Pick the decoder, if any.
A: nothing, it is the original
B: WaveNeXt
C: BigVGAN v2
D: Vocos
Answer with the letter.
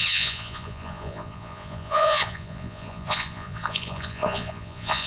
D